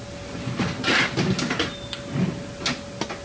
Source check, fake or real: real